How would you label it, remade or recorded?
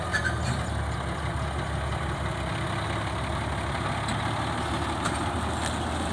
recorded